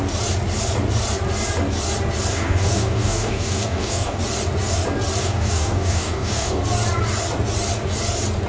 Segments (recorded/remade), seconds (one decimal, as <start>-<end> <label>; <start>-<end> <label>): 0.0-2.3 recorded; 2.3-4.2 remade; 4.2-5.2 recorded; 5.2-6.6 remade; 6.6-8.5 recorded